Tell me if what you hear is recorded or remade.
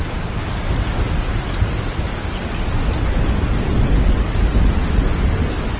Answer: recorded